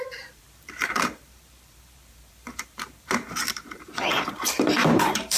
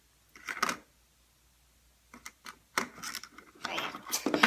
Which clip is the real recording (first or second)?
second